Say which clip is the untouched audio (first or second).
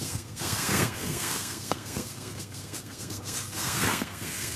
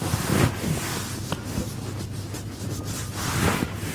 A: second